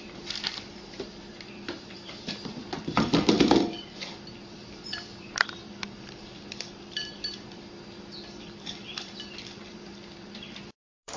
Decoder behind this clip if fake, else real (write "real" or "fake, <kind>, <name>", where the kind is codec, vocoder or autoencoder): fake, vocoder, BigVGAN v2